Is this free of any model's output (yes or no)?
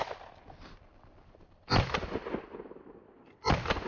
yes